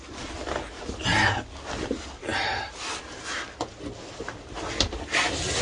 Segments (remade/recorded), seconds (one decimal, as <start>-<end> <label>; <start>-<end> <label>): 0.0-5.6 recorded